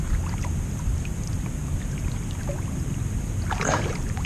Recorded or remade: remade